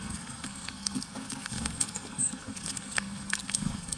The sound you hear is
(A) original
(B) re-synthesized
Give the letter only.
B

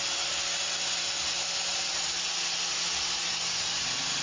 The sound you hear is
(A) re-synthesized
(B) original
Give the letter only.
B